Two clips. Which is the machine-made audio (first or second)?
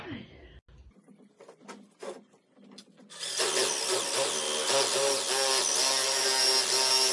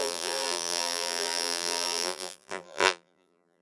second